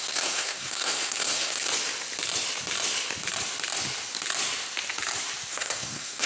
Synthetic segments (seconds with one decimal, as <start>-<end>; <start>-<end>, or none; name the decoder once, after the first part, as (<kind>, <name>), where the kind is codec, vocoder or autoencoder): 0.0-1.7 (codec, SNAC); 5.5-6.3